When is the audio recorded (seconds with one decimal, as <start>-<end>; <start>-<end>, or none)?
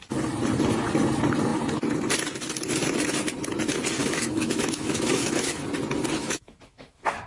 0.0-4.0; 5.6-6.2